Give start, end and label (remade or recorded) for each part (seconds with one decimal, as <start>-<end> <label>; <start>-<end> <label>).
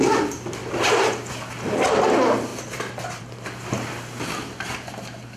0.0-5.4 recorded